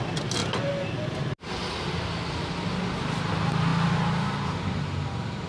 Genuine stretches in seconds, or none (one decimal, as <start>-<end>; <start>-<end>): 0.0-5.5